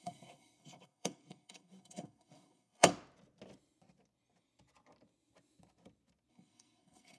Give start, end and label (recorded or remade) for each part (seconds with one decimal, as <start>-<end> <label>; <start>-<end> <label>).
0.0-2.9 remade; 2.9-6.3 recorded; 6.3-7.2 remade